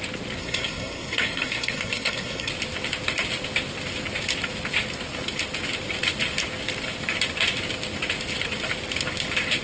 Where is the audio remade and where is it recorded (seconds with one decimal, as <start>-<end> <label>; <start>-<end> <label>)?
0.0-0.4 recorded; 0.4-2.5 remade; 2.5-9.6 recorded